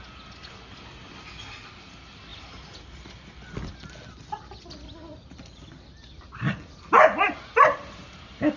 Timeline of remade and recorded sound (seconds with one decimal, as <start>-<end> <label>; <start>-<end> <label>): 0.0-8.6 recorded